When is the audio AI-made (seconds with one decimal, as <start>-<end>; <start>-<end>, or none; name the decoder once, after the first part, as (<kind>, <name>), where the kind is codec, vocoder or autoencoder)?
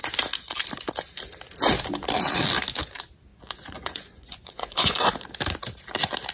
3.3-5.1 (vocoder, Vocos)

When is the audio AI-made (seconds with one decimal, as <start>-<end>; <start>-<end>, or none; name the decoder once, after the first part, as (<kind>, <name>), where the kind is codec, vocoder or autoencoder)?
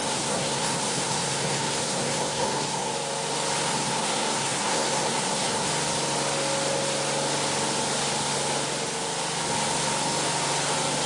0.0-2.9 (codec, SNAC); 3.7-5.7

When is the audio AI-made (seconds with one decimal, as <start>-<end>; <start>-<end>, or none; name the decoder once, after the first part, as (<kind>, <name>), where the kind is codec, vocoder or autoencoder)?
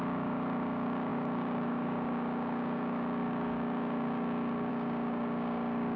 0.0-6.0 (codec, DAC)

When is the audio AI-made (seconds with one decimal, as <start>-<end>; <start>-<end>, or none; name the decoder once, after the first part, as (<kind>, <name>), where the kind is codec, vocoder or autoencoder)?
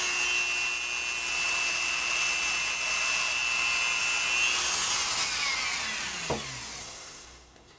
6.8-7.8 (codec, SNAC)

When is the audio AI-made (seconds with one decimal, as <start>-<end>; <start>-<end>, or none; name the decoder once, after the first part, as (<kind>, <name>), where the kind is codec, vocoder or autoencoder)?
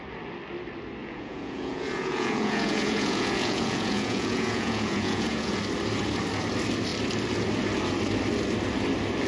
1.0-5.6 (vocoder, Vocos)